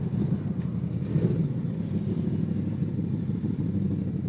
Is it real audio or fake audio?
real